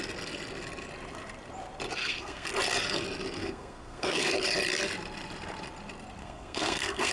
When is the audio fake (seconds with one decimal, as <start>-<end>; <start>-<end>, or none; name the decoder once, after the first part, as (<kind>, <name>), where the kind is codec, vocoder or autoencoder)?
2.0-2.5 (codec, SNAC); 3.4-4.3; 6.2-7.1